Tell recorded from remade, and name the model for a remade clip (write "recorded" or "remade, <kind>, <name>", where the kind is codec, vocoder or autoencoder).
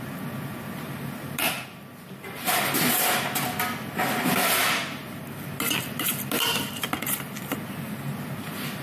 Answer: recorded